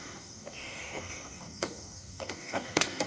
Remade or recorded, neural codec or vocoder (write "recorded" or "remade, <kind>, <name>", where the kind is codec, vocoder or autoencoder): remade, codec, DAC